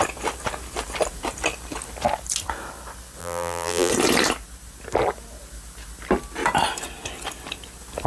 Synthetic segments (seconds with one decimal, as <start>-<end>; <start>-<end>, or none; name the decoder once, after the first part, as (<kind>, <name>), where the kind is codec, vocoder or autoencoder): 3.2-3.9 (vocoder, BigVGAN v2)